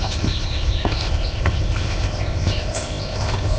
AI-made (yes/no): yes